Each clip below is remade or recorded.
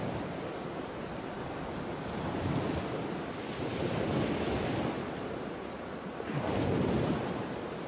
recorded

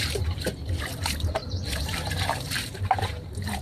remade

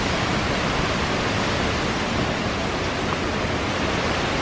recorded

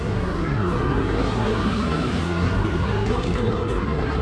remade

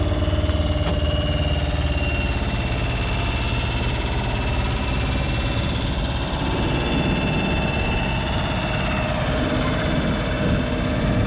recorded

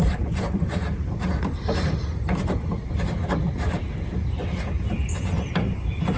remade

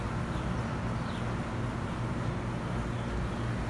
recorded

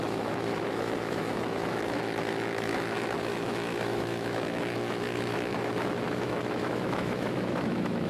remade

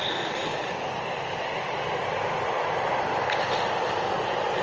recorded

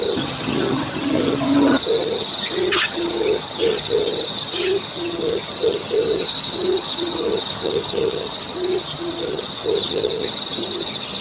remade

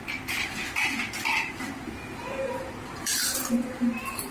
remade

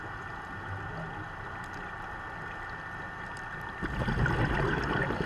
recorded